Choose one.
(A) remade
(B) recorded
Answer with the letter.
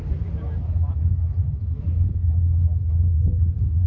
B